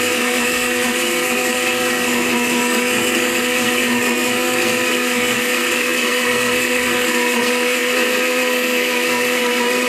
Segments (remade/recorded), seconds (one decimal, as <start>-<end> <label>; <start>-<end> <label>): 0.0-9.9 remade